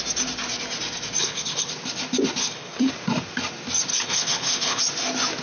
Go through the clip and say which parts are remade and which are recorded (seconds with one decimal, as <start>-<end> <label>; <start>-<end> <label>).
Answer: 0.0-1.2 recorded; 1.2-1.7 remade; 1.7-2.4 recorded; 2.4-2.9 remade; 2.9-3.9 recorded; 3.9-4.8 remade; 4.8-5.4 recorded